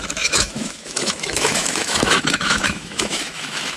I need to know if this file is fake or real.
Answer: fake